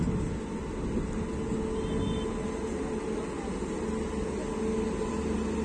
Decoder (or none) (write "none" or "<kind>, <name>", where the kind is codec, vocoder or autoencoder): none